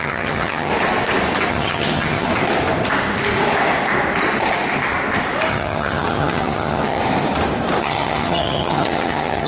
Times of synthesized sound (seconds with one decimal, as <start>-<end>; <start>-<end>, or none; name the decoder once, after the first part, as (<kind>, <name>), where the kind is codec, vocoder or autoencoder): 0.0-0.7 (vocoder, HiFi-GAN); 1.5-2.3; 5.5-7.0; 7.8-9.5